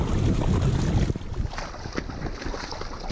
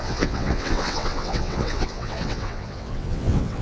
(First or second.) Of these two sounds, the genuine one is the first